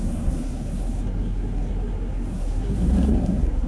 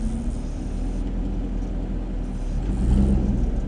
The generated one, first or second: first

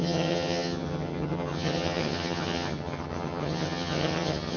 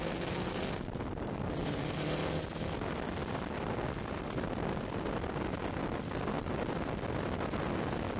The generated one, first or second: first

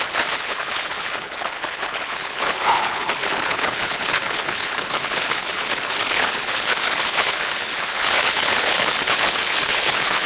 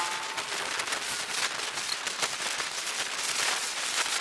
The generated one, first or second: first